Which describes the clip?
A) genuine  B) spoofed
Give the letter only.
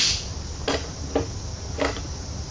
A